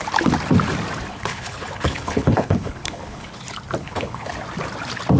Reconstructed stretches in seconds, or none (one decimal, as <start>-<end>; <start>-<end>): 1.1-3.4; 3.8-4.3